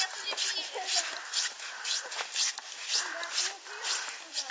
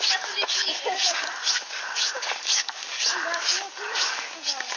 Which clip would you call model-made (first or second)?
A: second